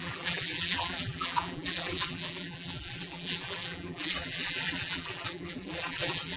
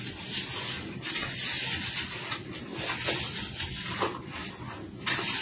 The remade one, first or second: first